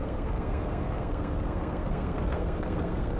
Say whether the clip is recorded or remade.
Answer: remade